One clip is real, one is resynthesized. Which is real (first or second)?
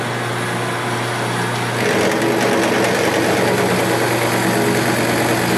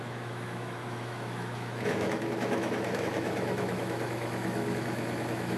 first